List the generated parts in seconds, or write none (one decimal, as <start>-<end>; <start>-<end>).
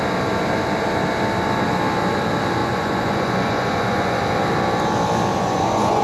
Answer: 2.6-4.2; 5.3-6.0